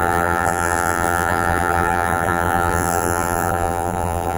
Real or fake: fake